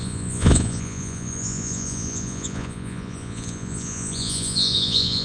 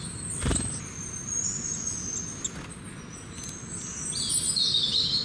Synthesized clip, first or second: first